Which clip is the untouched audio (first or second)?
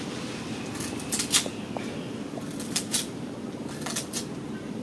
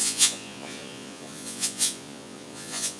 first